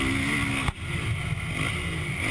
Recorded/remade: recorded